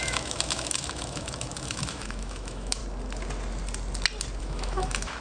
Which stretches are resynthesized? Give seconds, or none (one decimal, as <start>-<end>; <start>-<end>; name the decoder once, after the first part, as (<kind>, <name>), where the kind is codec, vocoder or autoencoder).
0.0-2.8 (autoencoder, DAC-VAE); 4.4-5.2